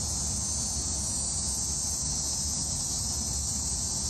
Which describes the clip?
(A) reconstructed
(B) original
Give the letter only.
B